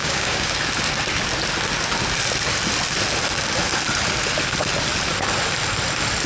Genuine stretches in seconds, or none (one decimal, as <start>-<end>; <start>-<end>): 0.5-6.3

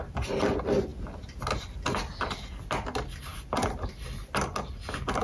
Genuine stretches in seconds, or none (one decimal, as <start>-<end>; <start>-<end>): 0.0-5.2

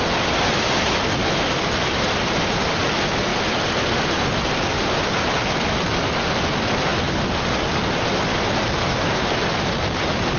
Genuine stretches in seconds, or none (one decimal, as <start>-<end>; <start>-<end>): 0.0-8.8; 9.3-10.4

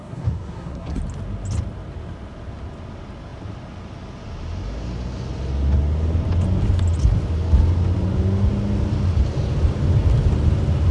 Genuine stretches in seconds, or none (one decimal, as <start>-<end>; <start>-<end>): 1.0-10.9